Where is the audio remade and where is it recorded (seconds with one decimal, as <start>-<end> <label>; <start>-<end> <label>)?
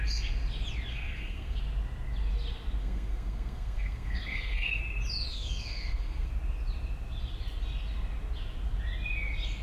0.0-0.9 recorded; 0.9-1.6 remade; 1.6-2.8 recorded; 2.8-4.8 remade; 4.8-5.3 recorded; 5.3-6.3 remade; 6.3-9.6 recorded